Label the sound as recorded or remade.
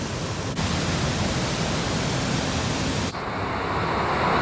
recorded